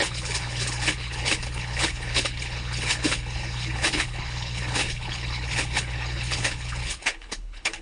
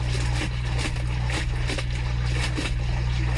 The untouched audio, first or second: second